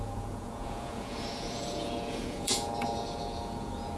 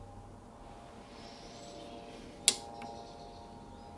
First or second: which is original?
second